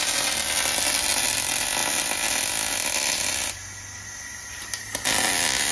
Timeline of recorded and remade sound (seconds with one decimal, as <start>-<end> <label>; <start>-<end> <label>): 0.0-5.7 recorded